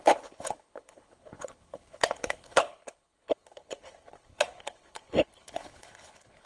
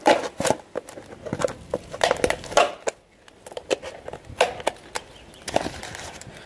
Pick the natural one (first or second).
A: second